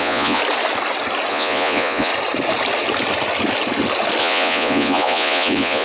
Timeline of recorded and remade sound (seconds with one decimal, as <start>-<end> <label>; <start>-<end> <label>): 0.0-0.4 remade; 0.4-1.3 recorded; 1.3-2.1 remade; 2.1-4.2 recorded; 4.2-5.8 remade